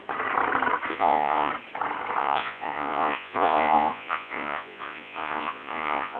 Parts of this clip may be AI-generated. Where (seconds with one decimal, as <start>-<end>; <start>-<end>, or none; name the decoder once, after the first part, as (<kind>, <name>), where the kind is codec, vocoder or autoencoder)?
0.9-1.5 (vocoder, Vocos); 2.2-6.2